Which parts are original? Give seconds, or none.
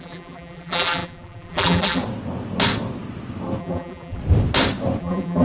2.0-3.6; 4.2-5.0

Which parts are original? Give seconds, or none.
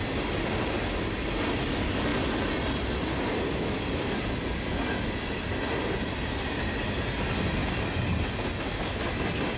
0.0-9.6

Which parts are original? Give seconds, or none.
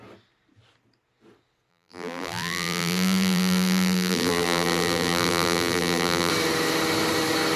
0.0-1.7; 6.3-7.6